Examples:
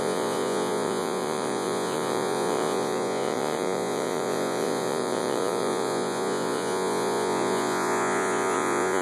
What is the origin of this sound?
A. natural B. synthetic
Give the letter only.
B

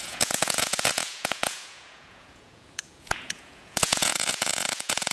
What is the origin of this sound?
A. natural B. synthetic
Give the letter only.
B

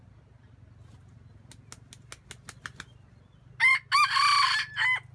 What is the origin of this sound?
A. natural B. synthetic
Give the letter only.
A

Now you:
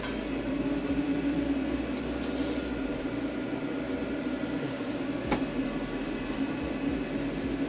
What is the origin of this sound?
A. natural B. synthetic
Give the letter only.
A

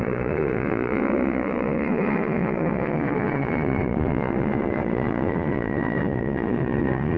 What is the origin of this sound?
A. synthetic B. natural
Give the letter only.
A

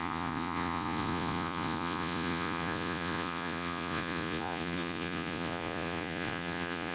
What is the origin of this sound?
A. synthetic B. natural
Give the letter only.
A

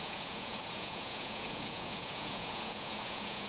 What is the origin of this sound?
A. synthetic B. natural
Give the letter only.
A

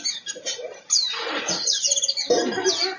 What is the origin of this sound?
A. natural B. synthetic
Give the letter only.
A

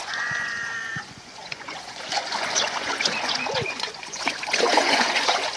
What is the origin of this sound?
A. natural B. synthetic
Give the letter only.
B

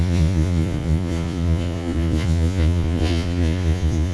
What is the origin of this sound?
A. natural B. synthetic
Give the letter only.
B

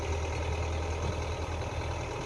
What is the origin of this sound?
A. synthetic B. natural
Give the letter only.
B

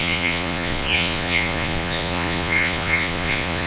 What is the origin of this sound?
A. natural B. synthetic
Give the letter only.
B